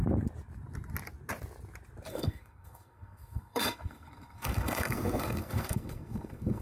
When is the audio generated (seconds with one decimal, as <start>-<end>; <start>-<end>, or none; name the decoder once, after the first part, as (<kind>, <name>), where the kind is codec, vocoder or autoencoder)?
2.1-6.6 (codec, SNAC)